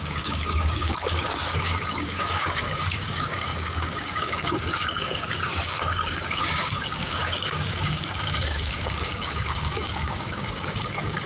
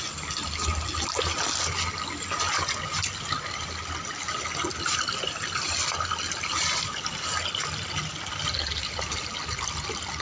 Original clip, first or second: second